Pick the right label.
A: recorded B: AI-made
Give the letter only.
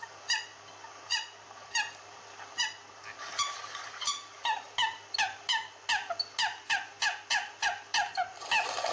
A